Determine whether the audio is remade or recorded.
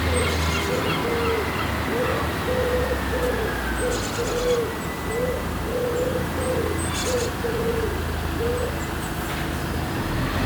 recorded